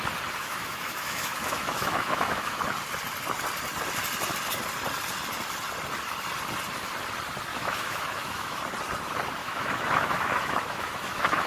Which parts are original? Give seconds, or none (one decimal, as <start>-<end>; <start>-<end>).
0.0-0.4; 2.6-7.5; 8.6-9.4